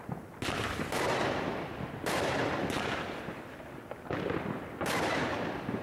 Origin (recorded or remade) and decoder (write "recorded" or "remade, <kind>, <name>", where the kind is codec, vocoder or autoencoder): recorded